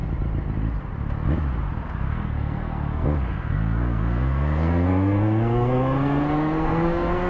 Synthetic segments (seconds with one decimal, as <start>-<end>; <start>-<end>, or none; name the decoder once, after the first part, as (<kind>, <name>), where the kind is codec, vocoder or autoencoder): 2.0-7.3 (codec, SNAC)